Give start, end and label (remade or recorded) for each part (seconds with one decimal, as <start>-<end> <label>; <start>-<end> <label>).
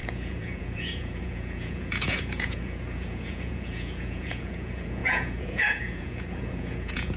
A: 0.0-7.2 remade